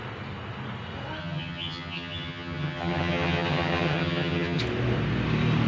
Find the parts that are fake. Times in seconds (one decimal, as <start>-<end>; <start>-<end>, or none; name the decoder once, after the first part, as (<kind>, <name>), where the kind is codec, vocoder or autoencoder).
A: 1.2-4.6 (vocoder, HiFi-GAN)